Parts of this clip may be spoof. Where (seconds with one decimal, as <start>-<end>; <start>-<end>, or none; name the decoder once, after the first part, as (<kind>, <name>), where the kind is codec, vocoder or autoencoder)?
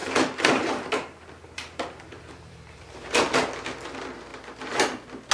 0.0-3.2 (vocoder, BigVGAN v2)